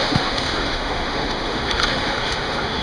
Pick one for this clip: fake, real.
fake